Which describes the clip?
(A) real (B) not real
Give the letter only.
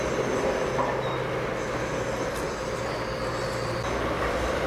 A